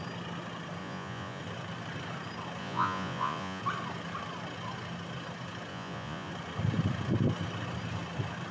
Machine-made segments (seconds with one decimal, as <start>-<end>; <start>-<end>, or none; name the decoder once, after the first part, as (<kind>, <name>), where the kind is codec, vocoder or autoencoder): 0.8-1.4 (vocoder, Vocos); 2.6-3.6; 5.7-6.3